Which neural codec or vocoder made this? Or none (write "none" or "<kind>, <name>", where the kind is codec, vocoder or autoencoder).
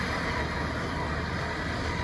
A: none